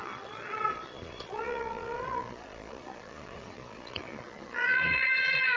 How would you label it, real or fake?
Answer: fake